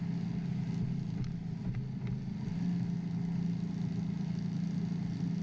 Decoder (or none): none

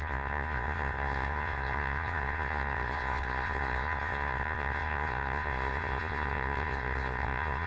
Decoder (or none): vocoder, Vocos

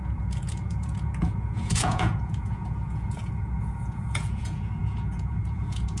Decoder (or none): vocoder, Vocos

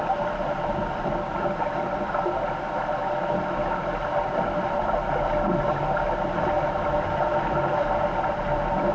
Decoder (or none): none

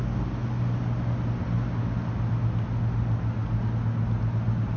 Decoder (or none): none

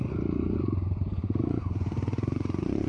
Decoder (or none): vocoder, Vocos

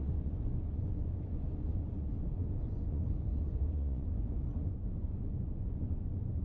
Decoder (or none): vocoder, Vocos